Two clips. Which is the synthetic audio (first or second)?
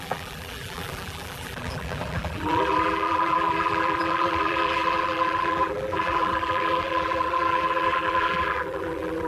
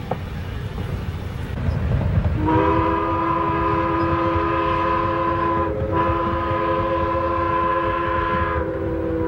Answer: first